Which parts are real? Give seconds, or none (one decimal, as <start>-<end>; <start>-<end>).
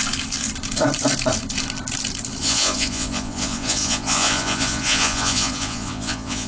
0.0-2.4